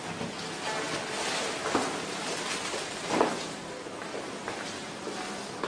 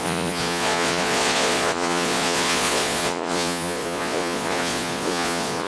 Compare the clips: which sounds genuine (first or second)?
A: first